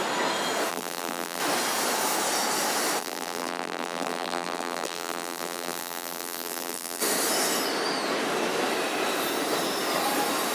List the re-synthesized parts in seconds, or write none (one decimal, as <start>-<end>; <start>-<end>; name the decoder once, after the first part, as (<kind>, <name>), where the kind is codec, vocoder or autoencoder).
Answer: 0.7-1.4 (vocoder, BigVGAN v2); 3.0-7.0